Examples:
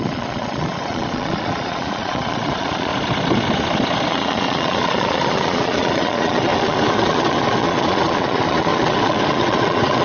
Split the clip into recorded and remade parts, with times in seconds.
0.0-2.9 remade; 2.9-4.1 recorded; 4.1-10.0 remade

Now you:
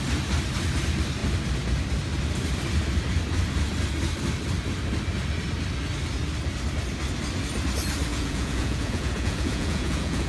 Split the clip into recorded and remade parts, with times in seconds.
0.0-8.1 recorded; 8.1-10.3 remade

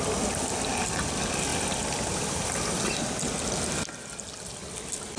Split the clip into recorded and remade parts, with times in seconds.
0.0-5.2 recorded